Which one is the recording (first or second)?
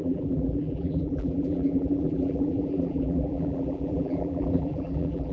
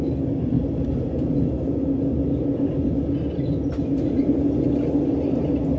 second